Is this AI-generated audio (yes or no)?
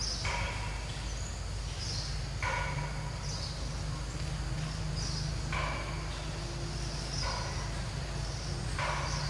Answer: no